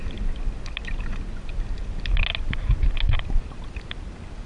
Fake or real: real